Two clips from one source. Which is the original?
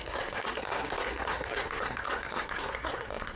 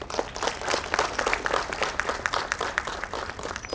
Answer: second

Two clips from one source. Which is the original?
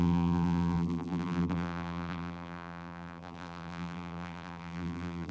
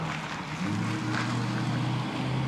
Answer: second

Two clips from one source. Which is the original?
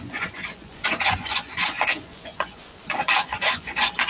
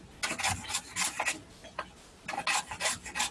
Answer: second